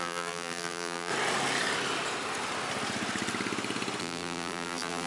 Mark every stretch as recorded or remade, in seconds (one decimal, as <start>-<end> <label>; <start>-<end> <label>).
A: 0.0-1.1 remade; 1.1-4.0 recorded; 4.0-5.1 remade